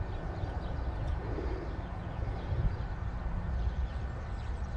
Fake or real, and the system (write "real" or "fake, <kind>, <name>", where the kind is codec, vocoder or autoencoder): fake, vocoder, BigVGAN v2